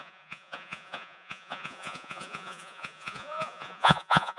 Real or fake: fake